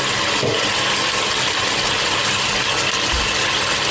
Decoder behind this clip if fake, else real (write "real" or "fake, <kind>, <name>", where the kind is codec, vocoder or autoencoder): real